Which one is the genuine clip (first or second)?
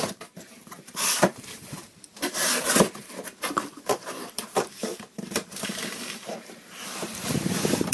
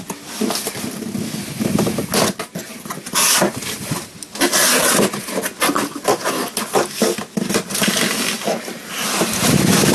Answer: second